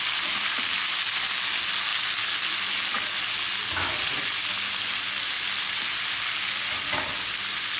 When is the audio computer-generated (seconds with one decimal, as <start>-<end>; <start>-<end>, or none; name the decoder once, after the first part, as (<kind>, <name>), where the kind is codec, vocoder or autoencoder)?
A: none